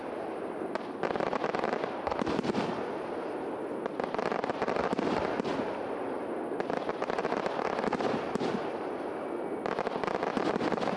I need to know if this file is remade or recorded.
recorded